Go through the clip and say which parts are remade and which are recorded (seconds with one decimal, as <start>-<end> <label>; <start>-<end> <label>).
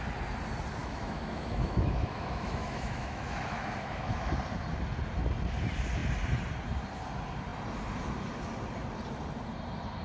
0.0-0.8 recorded; 0.8-4.3 remade; 4.3-10.0 recorded